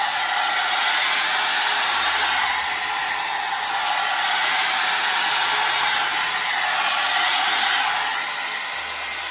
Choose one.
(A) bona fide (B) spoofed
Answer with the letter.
A